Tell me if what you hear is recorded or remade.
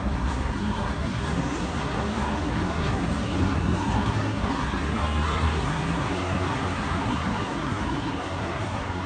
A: remade